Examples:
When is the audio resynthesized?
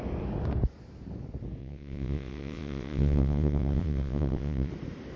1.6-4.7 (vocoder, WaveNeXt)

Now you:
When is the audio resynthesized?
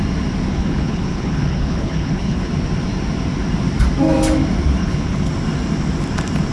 0.5-2.5 (codec, HILCodec); 4.8-5.3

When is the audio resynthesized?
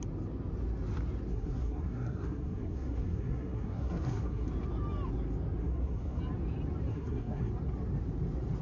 1.3-4.5 (codec, SNAC); 5.6-6.2; 6.9-7.5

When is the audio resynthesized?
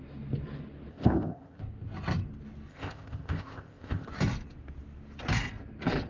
0.9-1.6 (codec, ZipCodec); 2.7-4.1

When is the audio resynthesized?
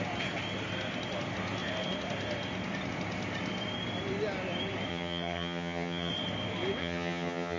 4.9-6.1 (vocoder, HiFi-GAN); 6.8-7.6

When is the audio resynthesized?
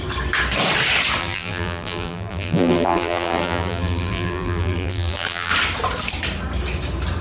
1.2-5.5 (vocoder, BigVGAN v2)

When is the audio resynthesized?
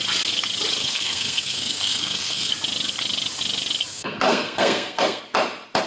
0.8-2.5 (codec, SNAC); 3.9-5.2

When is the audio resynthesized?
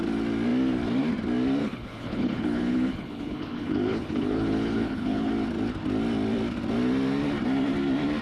1.6-5.3 (codec, HILCodec)